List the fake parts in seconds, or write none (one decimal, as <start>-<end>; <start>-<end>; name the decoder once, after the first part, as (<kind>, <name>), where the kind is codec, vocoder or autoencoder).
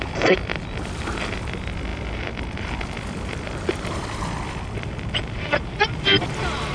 none